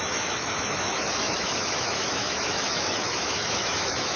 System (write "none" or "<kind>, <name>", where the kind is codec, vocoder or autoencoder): autoencoder, DAC-VAE